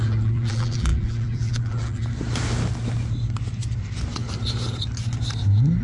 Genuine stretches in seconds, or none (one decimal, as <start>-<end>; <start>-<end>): 2.0-5.8